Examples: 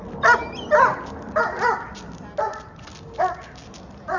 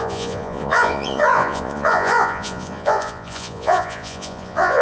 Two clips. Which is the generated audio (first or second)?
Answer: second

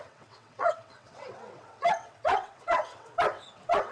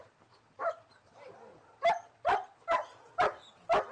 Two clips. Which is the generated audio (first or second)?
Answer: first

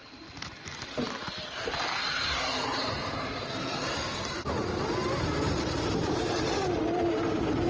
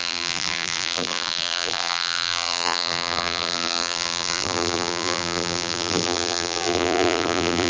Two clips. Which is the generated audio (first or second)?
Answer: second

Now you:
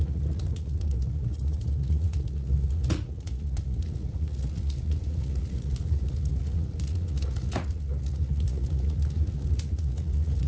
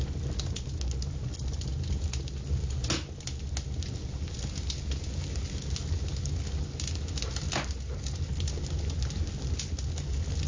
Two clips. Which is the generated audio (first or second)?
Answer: first